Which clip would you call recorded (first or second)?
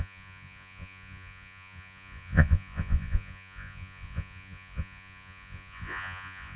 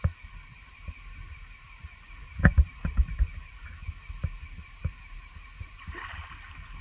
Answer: second